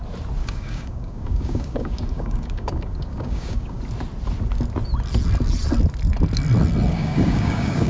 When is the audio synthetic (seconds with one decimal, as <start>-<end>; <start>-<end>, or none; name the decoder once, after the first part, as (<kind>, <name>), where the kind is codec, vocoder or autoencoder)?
0.4-3.8 (codec, DAC); 6.9-7.9